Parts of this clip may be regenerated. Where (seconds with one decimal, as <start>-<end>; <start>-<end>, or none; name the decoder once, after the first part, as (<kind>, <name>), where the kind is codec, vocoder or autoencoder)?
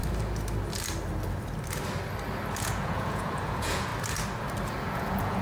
2.6-3.9 (vocoder, Vocos); 4.8-5.4